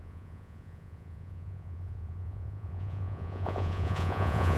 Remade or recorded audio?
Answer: remade